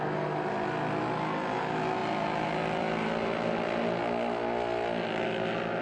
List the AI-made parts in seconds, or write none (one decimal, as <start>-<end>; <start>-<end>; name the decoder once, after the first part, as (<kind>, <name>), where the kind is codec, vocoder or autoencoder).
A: 2.0-3.8 (vocoder, BigVGAN v2)